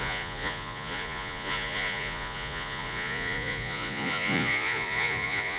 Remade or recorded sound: remade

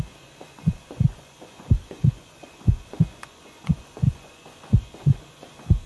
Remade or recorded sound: remade